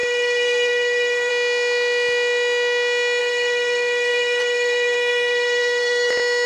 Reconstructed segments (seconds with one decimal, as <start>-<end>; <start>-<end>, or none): 0.0-1.3; 3.2-6.1